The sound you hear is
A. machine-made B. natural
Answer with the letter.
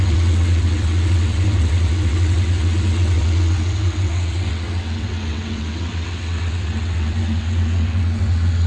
A